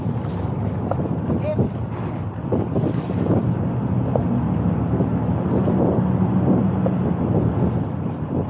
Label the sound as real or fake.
real